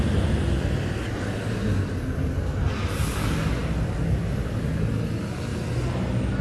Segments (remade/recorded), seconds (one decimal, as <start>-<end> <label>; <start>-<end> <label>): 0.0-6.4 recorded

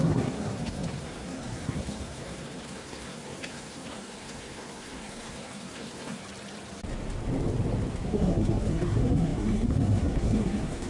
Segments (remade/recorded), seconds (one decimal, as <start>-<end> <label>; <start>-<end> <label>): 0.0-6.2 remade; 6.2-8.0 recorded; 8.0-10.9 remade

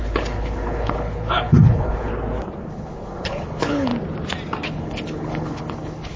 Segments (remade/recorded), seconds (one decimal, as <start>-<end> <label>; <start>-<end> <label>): 0.0-2.1 remade; 2.1-2.7 recorded; 2.7-3.9 remade; 3.9-4.7 recorded; 4.7-6.2 remade

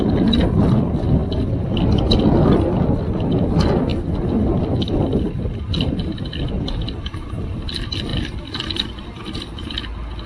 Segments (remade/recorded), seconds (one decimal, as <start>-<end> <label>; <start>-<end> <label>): 0.0-10.3 recorded

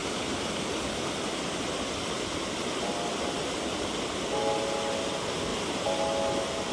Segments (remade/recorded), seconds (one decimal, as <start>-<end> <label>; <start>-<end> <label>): 0.0-6.7 recorded

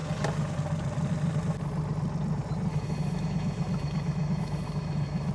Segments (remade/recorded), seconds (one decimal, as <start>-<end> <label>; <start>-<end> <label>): 0.0-2.7 recorded; 2.7-5.3 remade

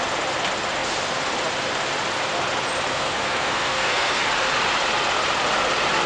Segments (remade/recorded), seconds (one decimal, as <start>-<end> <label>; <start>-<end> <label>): 0.0-2.9 recorded; 2.9-4.2 remade; 4.2-6.1 recorded

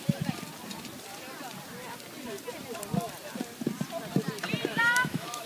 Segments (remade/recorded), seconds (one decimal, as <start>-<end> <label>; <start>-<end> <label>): 0.0-4.7 recorded; 4.7-5.5 remade